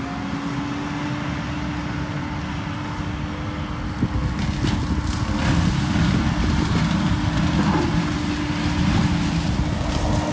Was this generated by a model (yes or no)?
no